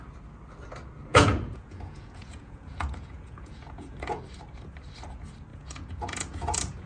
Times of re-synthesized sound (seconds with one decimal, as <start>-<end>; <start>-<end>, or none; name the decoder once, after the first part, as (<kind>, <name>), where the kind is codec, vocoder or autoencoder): 1.1-4.2 (vocoder, Vocos); 5.5-6.9

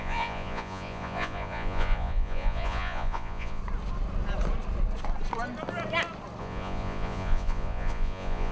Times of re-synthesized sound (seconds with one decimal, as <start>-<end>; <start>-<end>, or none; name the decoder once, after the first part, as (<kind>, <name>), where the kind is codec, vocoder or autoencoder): 0.0-3.6 (vocoder, Vocos); 6.4-8.5

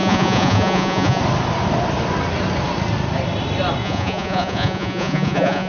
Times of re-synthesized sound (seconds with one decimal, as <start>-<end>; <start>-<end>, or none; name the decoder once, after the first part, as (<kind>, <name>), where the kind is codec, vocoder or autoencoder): 0.0-1.2 (vocoder, Vocos); 3.8-5.7